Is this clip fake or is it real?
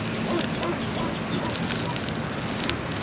real